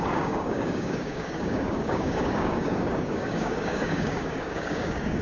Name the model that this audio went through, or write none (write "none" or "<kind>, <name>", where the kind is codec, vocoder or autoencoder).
codec, DAC